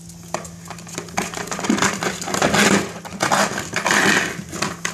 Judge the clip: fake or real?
real